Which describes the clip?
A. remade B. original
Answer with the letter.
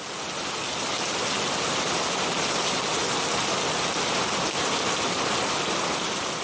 B